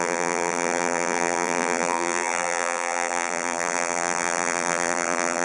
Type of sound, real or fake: fake